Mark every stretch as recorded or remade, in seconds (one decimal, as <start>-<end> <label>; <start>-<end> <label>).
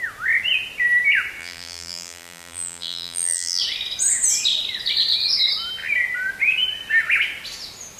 0.0-1.4 recorded; 1.4-3.6 remade; 3.6-8.0 recorded